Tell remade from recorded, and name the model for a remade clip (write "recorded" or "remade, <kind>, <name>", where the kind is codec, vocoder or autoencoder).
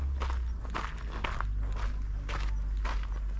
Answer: recorded